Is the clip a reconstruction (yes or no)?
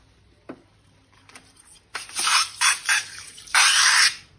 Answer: yes